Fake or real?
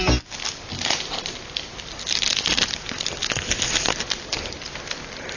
real